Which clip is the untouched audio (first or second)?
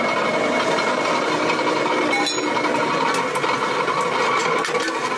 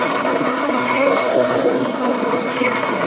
first